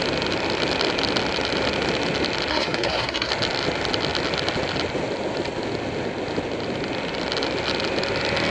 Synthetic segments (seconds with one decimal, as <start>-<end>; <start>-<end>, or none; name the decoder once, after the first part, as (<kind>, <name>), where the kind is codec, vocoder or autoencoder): 2.5-3.3 (codec, SNAC)

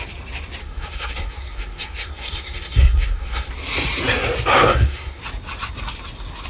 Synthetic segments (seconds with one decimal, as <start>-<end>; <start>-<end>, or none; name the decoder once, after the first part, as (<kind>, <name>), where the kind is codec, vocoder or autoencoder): 0.6-3.5 (codec, SNAC); 4.5-5.2

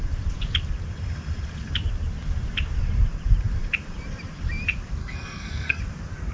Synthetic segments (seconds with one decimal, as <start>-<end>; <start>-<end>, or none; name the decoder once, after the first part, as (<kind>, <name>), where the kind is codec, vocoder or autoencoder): 5.0-5.8 (codec, SNAC)

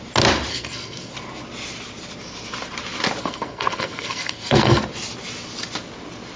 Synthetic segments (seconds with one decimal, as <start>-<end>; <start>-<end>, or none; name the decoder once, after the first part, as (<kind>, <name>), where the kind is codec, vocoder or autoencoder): 0.5-1.1 (codec, SNAC); 3.2-4.8

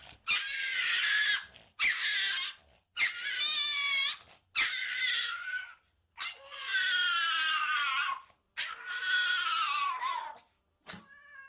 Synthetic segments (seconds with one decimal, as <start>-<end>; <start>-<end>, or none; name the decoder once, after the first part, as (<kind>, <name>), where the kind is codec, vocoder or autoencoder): none

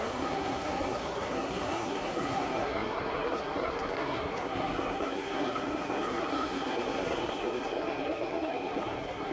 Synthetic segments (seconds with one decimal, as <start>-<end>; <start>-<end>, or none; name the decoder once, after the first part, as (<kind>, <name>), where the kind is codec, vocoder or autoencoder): 0.0-9.3 (codec, SNAC)

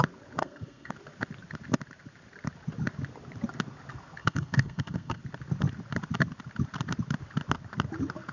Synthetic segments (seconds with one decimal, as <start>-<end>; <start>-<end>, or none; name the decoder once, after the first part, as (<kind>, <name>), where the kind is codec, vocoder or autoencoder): 0.4-0.9 (codec, SNAC); 4.2-5.2

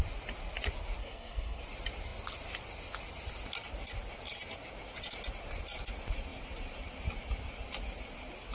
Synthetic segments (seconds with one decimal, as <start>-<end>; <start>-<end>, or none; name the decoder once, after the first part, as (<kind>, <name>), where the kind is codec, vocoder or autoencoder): 1.0-1.6 (codec, SNAC)